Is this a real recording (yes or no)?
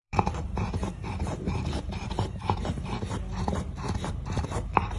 no